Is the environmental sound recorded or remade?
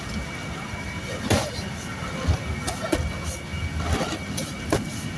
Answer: recorded